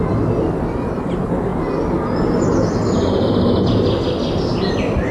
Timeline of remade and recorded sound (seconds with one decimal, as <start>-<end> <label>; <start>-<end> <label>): 0.0-5.1 recorded